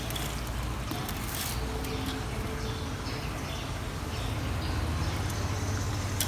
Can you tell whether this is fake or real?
real